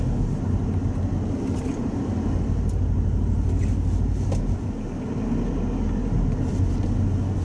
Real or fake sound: real